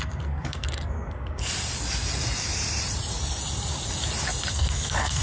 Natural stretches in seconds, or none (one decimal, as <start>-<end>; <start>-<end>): 1.4-4.5